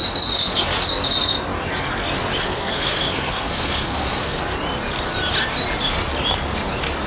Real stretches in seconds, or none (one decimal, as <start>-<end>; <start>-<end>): 0.0-2.4; 4.4-7.1